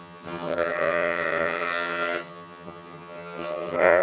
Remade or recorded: remade